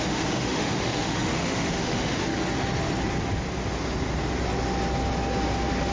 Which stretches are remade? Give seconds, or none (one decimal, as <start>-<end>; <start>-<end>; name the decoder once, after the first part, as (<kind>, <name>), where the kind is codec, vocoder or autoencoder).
0.0-2.3 (autoencoder, DAC-VAE)